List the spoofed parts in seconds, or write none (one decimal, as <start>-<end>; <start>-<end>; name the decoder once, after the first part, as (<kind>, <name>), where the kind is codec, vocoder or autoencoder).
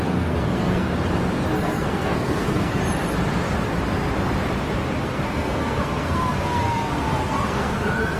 0.0-0.9 (codec, SNAC); 1.6-2.8; 5.0-8.2